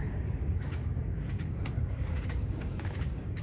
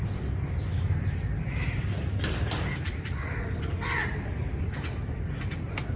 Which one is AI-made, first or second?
first